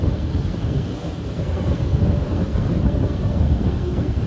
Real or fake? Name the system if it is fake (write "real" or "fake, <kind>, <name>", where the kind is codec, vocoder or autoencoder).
fake, codec, SNAC